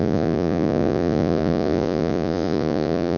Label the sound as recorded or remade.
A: remade